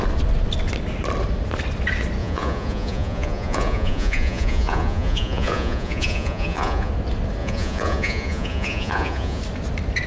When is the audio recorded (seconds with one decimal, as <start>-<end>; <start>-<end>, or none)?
0.0-2.2; 6.9-7.4; 9.4-10.1